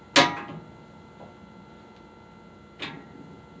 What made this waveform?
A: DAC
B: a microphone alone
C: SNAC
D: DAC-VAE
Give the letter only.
B